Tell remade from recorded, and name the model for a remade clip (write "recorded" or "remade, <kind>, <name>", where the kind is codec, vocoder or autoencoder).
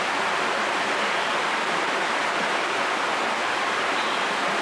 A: recorded